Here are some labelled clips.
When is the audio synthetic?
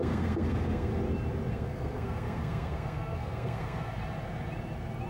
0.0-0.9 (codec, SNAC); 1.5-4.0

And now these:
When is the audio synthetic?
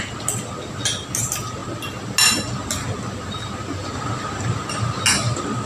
none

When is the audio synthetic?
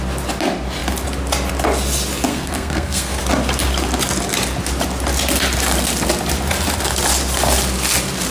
2.3-3.2 (codec, SNAC)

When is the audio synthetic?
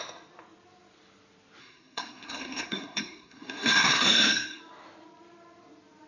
1.6-4.6 (codec, SNAC)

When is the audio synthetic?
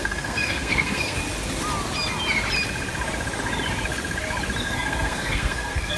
0.0-1.2 (codec, SNAC); 4.6-6.0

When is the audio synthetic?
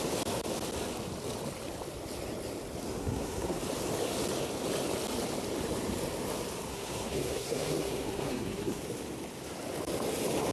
3.0-3.6 (codec, SNAC); 6.7-8.8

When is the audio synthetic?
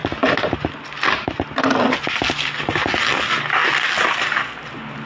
none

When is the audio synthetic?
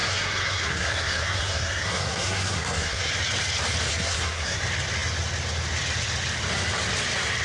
0.0-3.1 (codec, SNAC); 3.9-4.6